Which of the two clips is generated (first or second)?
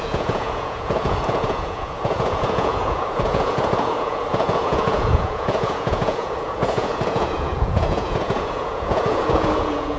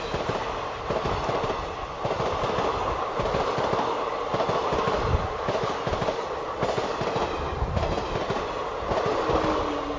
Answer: first